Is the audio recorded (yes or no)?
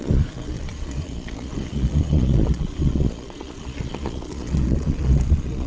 no